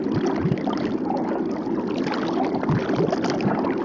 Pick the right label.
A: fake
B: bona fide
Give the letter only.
B